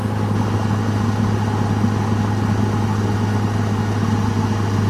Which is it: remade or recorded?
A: recorded